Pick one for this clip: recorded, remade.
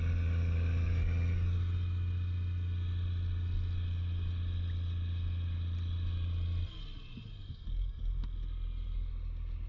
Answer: recorded